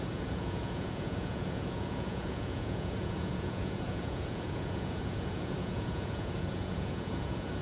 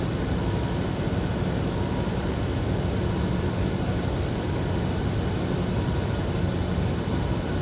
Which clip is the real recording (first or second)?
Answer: second